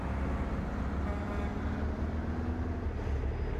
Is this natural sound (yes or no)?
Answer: yes